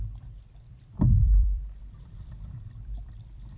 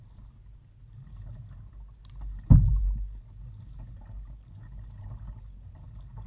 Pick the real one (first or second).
second